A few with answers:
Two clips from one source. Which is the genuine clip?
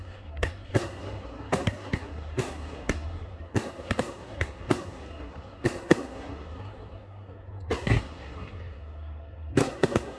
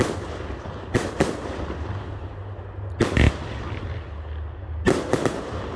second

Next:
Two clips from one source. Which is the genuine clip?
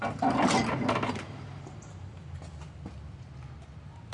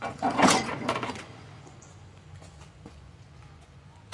first